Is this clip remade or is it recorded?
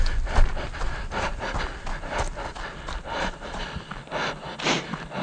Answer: recorded